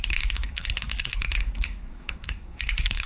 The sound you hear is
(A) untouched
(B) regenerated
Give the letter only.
B